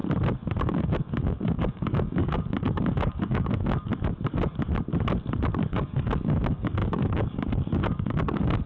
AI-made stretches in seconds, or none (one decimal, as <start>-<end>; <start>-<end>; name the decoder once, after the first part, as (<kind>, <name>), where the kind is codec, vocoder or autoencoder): 0.6-3.9 (codec, DAC); 5.7-8.7